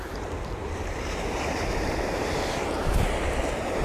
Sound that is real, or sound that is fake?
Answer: fake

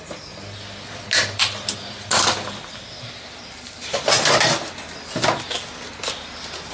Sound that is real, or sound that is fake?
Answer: real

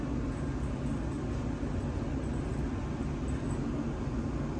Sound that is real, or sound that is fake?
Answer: real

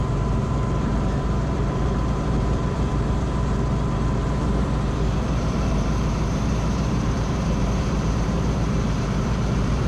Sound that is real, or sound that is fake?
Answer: fake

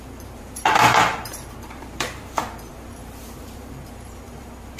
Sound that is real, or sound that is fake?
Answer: fake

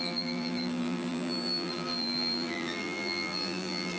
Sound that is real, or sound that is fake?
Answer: fake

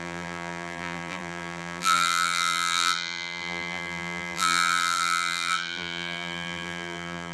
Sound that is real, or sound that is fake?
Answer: fake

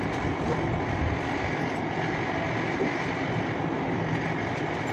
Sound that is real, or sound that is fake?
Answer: real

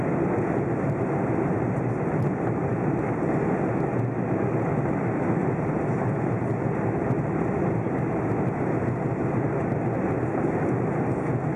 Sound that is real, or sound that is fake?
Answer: real